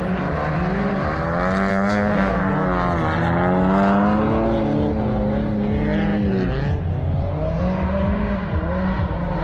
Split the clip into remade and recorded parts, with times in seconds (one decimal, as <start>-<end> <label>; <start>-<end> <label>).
0.0-1.7 recorded; 1.7-2.5 remade; 2.5-9.4 recorded